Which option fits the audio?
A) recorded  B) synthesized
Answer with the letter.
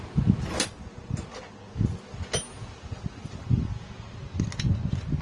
A